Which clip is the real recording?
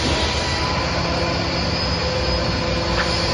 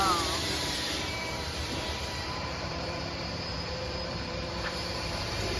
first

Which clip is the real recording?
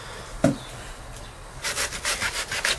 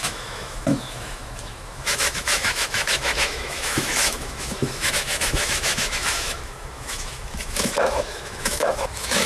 first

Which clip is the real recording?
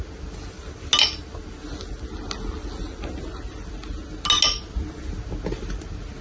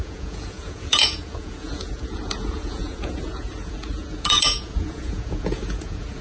first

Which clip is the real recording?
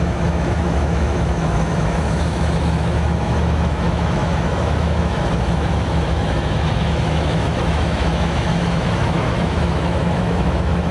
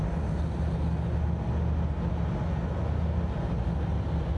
second